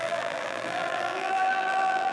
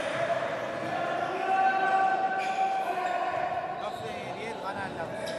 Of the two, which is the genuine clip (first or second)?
second